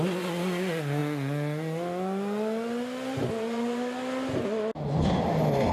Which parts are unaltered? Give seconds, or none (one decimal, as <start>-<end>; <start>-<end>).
0.0-5.7